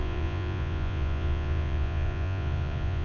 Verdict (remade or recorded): remade